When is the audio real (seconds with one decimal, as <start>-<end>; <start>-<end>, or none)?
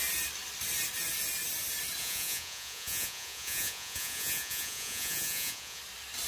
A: 0.0-2.0; 5.8-6.3